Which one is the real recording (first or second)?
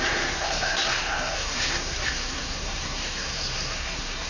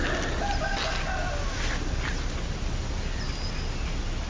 second